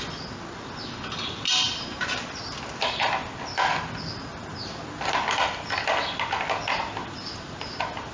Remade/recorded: recorded